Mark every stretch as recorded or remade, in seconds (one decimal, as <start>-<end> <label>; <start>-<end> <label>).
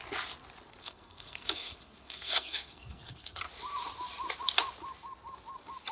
0.0-0.8 recorded; 0.8-3.4 remade; 3.4-5.9 recorded